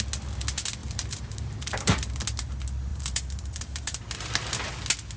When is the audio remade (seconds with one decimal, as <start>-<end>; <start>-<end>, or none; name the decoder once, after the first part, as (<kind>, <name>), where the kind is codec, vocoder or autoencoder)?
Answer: 0.8-2.2 (vocoder, BigVGAN v2); 2.9-4.0